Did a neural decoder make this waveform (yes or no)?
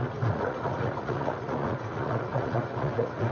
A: yes